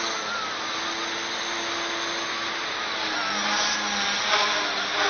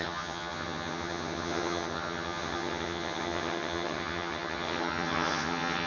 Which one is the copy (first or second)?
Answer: second